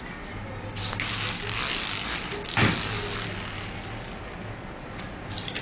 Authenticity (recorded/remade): recorded